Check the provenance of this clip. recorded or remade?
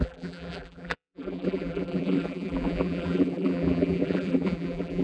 remade